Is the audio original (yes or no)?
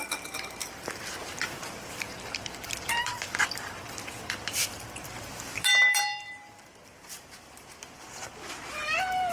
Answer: no